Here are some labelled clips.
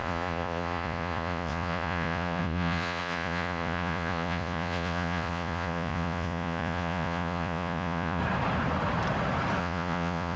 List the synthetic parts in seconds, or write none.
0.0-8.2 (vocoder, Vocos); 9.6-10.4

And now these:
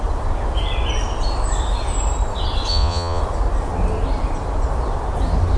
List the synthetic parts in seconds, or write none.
2.7-3.2 (vocoder, Vocos)

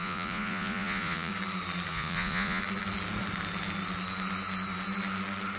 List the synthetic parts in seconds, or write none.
0.0-1.3 (vocoder, Vocos); 1.9-2.6

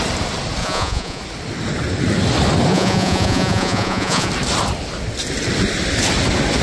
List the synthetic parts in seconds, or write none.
0.6-1.2 (vocoder, Vocos); 2.7-4.3

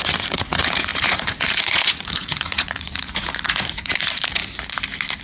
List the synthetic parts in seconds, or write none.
0.0-4.4 (vocoder, Vocos)

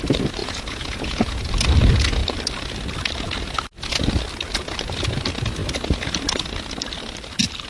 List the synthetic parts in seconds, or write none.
0.4-1.5 (vocoder, Vocos)

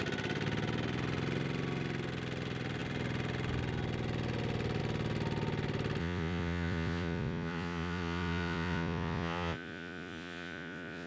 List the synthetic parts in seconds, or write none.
6.0-11.1 (vocoder, Vocos)

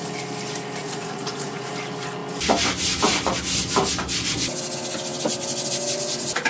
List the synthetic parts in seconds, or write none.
0.8-1.7 (vocoder, Vocos)